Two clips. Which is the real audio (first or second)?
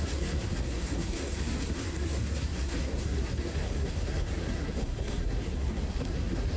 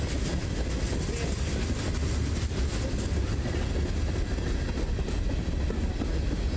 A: second